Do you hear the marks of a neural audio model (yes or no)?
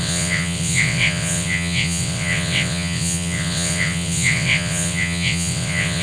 yes